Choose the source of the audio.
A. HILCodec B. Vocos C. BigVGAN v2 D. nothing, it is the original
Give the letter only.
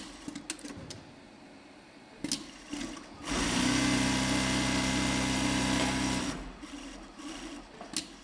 D